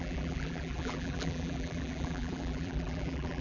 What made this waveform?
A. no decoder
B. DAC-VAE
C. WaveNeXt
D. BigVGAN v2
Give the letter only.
D